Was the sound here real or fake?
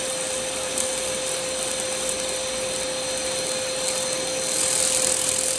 real